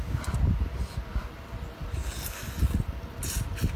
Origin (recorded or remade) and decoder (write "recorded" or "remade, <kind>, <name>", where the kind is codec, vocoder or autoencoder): recorded